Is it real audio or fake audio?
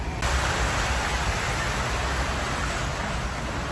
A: real